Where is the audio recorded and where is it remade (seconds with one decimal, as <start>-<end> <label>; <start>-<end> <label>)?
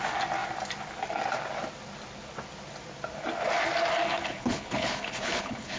0.0-4.1 recorded; 4.1-5.8 remade